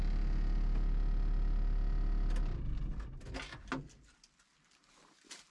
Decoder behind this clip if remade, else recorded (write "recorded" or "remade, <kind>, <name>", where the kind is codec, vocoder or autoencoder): recorded